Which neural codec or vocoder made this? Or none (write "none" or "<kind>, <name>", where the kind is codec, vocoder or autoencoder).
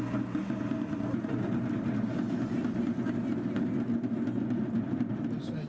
none